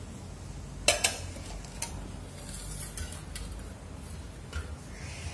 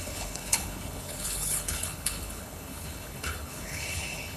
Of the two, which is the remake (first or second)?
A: second